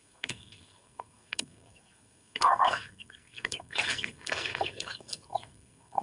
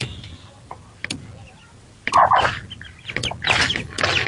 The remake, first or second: first